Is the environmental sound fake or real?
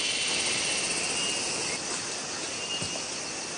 real